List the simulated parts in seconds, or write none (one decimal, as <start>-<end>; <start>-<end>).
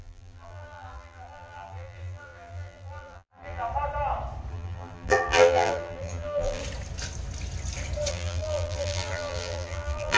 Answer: 0.0-3.7; 4.5-6.6; 8.1-10.2